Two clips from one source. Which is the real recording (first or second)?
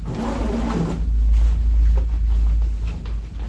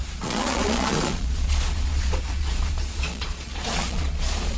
first